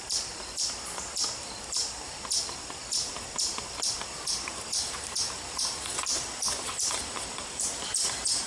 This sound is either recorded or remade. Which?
remade